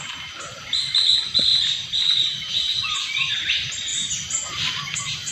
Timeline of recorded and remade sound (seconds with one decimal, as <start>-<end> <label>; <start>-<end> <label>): 0.0-5.3 recorded